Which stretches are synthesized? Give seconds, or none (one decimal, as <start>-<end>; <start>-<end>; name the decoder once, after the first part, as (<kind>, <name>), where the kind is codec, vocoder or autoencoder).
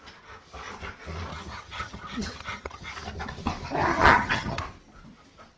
1.3-2.9 (vocoder, HiFi-GAN); 3.9-4.6